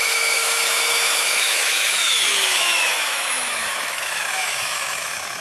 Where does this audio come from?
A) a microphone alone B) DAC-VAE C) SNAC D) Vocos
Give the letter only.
B